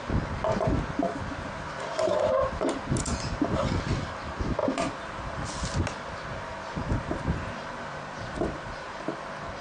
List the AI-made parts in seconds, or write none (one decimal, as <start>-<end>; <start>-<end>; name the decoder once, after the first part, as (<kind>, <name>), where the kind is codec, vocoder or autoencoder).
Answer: 4.6-5.7 (vocoder, BigVGAN v2); 6.5-9.2